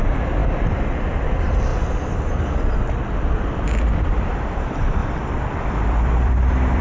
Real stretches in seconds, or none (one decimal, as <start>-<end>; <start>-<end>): none